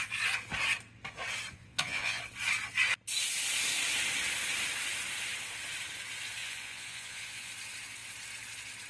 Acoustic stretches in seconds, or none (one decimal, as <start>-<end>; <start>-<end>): 0.0-1.5; 2.2-6.4; 7.5-8.9